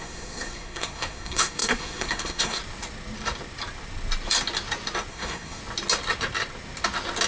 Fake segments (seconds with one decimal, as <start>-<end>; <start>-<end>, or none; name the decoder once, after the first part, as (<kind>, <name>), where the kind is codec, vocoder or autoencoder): 0.0-2.6 (codec, SNAC); 5.1-5.6